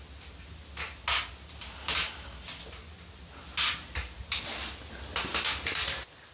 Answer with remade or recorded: recorded